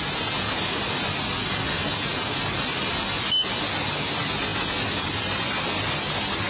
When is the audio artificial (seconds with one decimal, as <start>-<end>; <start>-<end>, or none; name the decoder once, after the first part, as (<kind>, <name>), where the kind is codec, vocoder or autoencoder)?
none